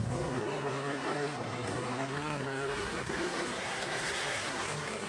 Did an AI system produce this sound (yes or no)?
yes